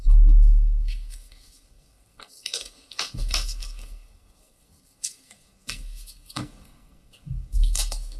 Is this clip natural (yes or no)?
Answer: no